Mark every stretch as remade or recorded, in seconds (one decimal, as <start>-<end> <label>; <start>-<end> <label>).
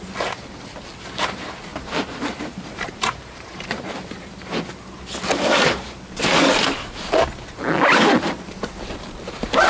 0.0-1.7 recorded; 1.7-3.9 remade; 3.9-9.7 recorded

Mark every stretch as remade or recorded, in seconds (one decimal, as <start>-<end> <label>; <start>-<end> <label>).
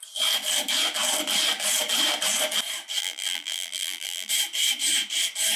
0.0-3.0 recorded; 3.0-4.3 remade; 4.3-5.6 recorded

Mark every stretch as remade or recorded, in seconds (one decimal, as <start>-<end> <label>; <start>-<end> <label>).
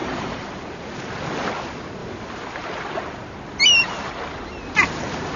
0.0-0.5 remade; 0.5-5.4 recorded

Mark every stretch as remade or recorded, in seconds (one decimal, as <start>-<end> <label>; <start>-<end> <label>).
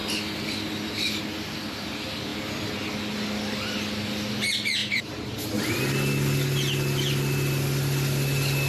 0.0-4.8 recorded; 4.8-5.4 remade; 5.4-8.7 recorded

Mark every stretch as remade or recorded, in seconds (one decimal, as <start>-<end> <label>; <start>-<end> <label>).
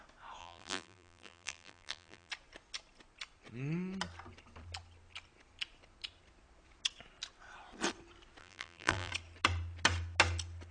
0.0-0.4 recorded; 0.4-2.3 remade; 2.3-8.4 recorded; 8.4-9.1 remade; 9.1-10.7 recorded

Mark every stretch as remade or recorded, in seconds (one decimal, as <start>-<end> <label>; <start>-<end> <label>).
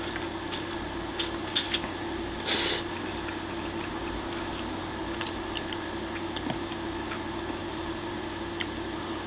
0.0-7.6 recorded; 7.6-8.2 remade; 8.2-9.3 recorded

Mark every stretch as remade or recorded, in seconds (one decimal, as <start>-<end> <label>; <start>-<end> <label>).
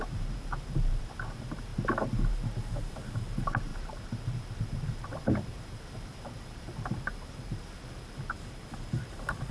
0.0-1.7 remade; 1.7-2.3 recorded; 2.3-9.5 remade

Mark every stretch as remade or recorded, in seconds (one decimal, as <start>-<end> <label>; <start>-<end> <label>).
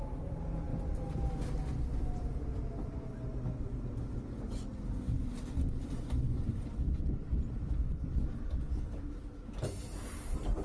0.0-10.6 recorded